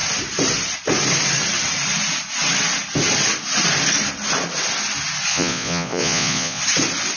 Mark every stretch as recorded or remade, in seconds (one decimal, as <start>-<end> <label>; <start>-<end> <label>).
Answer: 0.0-5.3 recorded; 5.3-6.6 remade; 6.6-7.2 recorded